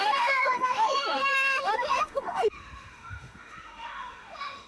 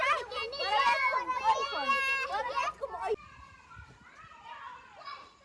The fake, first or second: first